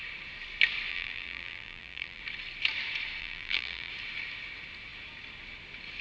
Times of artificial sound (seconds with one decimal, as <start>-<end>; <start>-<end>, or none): 0.9-2.2; 3.2-3.9